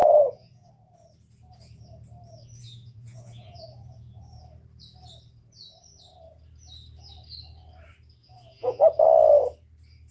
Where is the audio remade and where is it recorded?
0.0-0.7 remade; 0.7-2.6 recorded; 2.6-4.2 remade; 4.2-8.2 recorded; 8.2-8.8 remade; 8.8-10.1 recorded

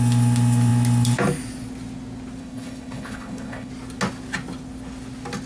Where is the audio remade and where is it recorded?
0.0-2.4 recorded; 2.4-3.7 remade; 3.7-5.5 recorded

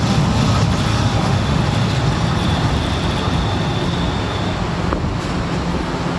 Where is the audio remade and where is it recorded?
0.0-0.9 recorded; 0.9-1.6 remade; 1.6-6.2 recorded

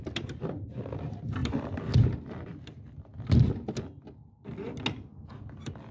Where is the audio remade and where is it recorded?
0.0-3.1 remade; 3.1-4.9 recorded; 4.9-5.9 remade